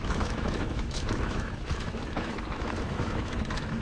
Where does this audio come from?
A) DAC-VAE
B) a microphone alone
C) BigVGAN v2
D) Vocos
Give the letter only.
A